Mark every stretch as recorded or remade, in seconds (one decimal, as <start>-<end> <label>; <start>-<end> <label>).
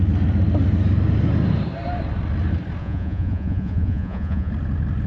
0.0-2.8 recorded; 2.8-4.5 remade; 4.5-5.1 recorded